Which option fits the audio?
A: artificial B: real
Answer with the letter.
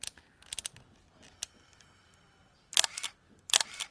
A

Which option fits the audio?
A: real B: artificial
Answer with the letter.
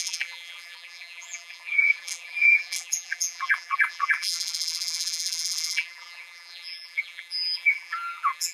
B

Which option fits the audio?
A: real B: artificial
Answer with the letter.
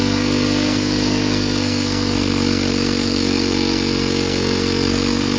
B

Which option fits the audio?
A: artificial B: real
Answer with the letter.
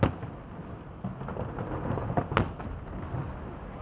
B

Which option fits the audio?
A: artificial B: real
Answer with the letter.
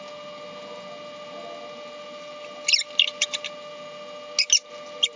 B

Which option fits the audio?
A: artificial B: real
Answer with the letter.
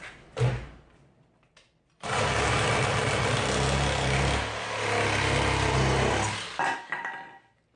B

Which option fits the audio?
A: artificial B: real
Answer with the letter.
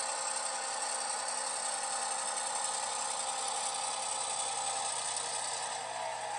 B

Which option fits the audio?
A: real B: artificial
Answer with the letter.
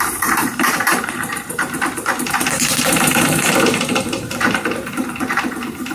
B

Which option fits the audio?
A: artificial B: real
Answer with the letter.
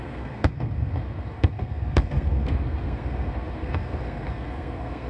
A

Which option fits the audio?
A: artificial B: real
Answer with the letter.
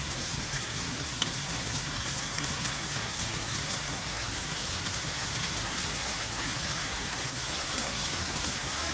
A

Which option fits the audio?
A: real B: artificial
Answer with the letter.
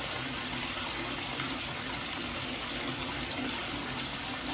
A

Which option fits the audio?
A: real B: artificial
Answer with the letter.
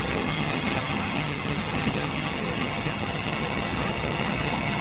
B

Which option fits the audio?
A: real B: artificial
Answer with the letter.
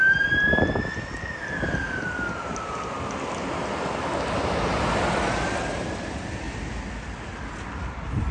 A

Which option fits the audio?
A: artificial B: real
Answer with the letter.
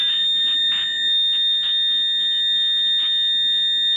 B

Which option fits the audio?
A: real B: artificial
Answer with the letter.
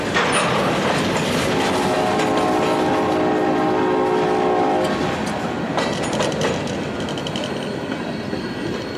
A